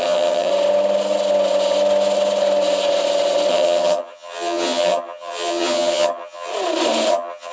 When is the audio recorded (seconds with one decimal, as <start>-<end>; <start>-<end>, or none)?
0.5-3.5; 6.5-7.1